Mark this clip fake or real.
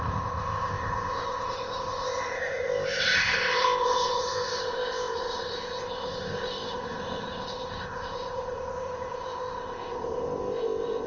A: fake